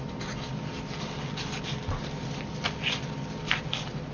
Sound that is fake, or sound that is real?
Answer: real